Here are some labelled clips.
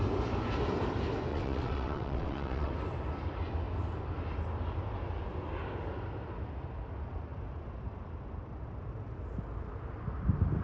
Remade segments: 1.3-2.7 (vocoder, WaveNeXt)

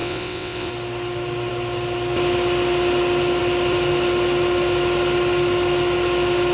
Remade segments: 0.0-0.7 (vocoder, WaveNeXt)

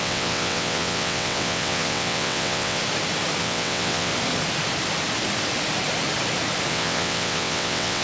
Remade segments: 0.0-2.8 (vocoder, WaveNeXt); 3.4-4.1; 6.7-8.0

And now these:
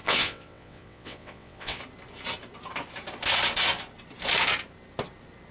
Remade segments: 0.0-1.8 (vocoder, WaveNeXt)

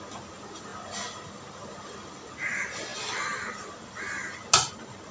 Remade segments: none

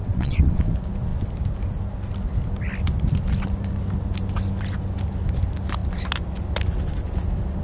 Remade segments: 0.0-0.6 (vocoder, WaveNeXt)

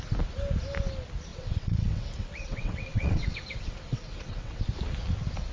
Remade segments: 1.3-4.6 (vocoder, WaveNeXt)